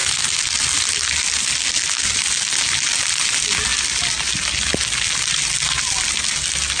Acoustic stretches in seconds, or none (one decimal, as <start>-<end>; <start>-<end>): 0.0-6.8

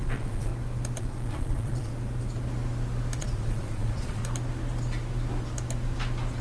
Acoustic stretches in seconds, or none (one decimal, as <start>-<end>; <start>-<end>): 0.5-1.0; 1.9-3.2; 4.2-6.4

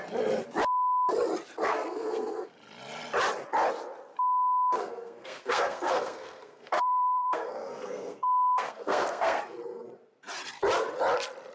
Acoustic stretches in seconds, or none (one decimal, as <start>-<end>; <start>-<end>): 0.0-1.6; 2.5-4.8; 9.4-11.5

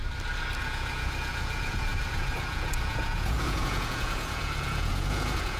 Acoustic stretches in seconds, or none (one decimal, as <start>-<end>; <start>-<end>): 0.0-0.6

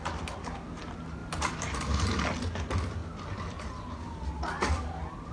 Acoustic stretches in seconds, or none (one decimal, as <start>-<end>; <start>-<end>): 0.0-1.2; 2.0-5.3

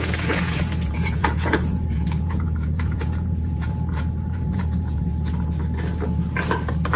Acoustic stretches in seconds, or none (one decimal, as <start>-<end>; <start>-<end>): 5.1-7.0